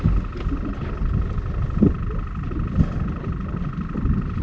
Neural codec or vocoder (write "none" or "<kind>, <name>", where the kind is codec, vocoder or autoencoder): none